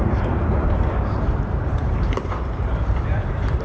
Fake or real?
fake